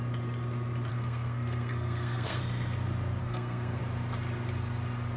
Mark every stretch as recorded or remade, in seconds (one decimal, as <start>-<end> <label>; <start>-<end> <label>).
0.0-0.9 recorded; 0.9-2.4 remade; 2.4-3.2 recorded; 3.2-3.8 remade; 3.8-5.2 recorded